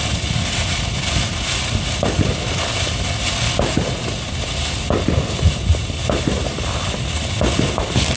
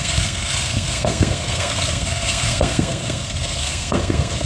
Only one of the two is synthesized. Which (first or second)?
second